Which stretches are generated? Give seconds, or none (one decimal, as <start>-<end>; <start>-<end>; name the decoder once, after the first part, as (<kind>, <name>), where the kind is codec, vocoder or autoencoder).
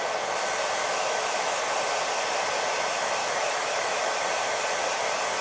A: 0.8-1.6 (autoencoder, DAC-VAE); 3.2-4.2